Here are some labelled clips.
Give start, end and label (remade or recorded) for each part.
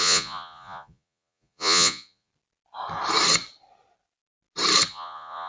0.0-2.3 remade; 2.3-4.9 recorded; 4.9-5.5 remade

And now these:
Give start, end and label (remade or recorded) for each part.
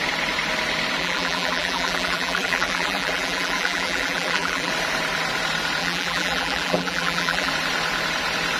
0.0-1.0 recorded; 1.0-4.7 remade; 4.7-5.8 recorded; 5.8-7.5 remade; 7.5-8.6 recorded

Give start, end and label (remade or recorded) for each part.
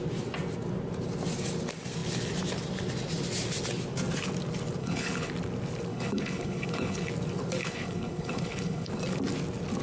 0.0-4.8 recorded; 4.8-5.3 remade; 5.3-5.9 recorded; 5.9-7.1 remade; 7.1-7.6 recorded; 7.6-8.9 remade; 8.9-9.8 recorded